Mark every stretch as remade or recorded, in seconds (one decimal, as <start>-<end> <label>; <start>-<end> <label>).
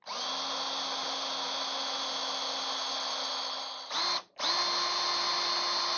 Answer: 0.0-6.0 recorded